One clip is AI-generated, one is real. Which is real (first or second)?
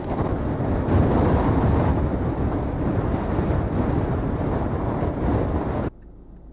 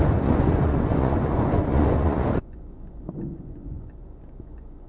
first